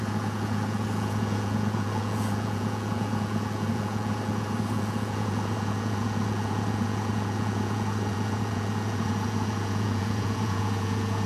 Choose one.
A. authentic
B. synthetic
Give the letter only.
B